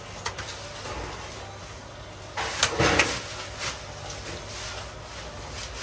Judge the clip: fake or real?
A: real